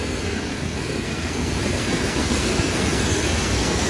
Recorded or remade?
remade